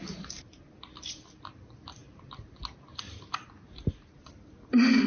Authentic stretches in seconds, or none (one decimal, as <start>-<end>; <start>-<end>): 0.0-5.1